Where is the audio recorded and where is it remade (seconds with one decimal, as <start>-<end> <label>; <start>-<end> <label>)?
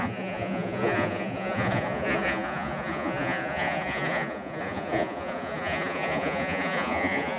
0.0-7.4 remade